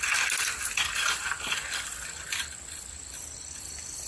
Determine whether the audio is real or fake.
real